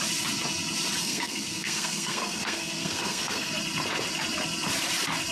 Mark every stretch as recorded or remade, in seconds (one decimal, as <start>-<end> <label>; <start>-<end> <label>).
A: 0.0-1.0 recorded; 1.0-3.5 remade; 3.5-5.3 recorded